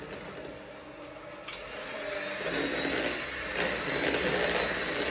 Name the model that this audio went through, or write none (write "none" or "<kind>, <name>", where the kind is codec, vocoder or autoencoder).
none